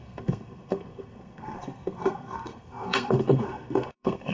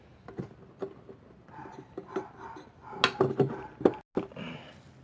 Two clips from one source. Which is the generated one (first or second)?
first